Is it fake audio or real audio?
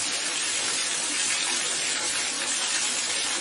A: real